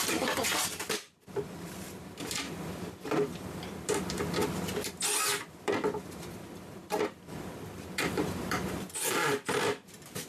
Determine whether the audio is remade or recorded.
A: remade